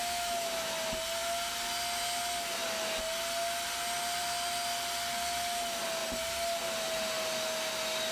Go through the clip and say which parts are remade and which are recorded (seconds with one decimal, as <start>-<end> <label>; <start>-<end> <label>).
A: 0.0-0.7 remade; 0.7-8.1 recorded